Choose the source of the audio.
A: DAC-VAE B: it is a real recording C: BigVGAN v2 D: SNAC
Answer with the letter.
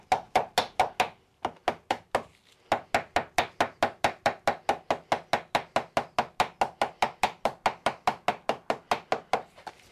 B